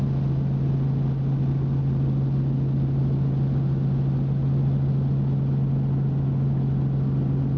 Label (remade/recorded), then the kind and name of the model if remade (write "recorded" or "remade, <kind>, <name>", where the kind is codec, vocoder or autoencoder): recorded